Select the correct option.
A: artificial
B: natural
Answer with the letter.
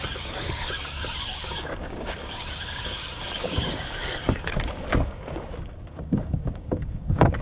A